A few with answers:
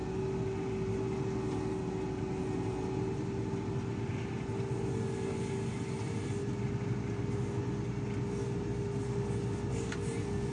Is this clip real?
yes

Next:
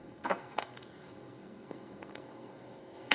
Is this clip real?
no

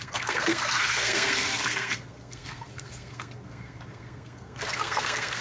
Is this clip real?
no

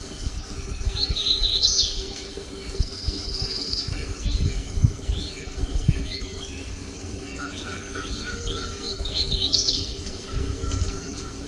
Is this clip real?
no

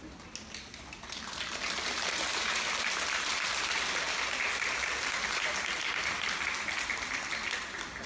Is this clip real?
yes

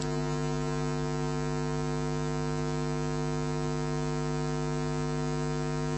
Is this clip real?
yes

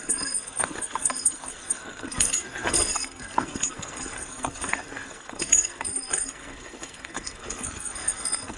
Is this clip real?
no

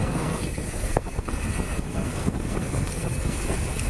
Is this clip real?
no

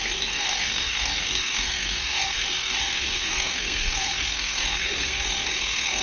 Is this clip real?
no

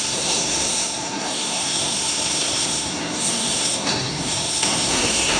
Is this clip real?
no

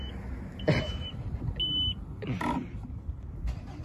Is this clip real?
yes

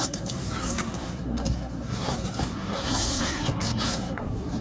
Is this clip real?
no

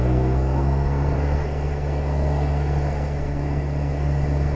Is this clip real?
no